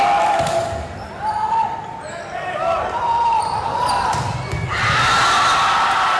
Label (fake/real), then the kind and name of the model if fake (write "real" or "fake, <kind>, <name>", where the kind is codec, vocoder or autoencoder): real